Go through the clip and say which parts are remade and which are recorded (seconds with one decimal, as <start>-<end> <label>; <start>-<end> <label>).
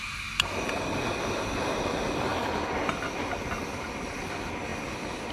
0.0-5.3 recorded